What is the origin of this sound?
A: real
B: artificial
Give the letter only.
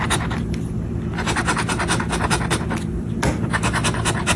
A